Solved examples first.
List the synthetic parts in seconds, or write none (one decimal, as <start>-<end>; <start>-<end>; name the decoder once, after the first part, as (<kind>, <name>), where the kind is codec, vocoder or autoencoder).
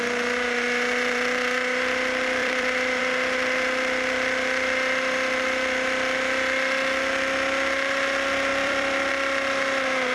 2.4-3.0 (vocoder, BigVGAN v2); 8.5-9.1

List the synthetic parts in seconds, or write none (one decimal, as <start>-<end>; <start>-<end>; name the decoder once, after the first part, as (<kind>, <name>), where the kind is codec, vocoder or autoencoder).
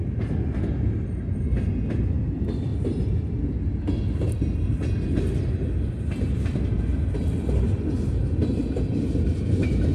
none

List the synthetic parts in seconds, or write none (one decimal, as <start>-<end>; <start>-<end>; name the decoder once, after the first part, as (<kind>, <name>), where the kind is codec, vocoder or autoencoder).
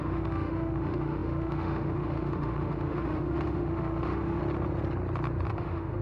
0.0-4.4 (autoencoder, DAC-VAE); 5.5-6.0